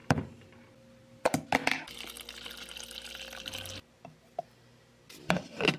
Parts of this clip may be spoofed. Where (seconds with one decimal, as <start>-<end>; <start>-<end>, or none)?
none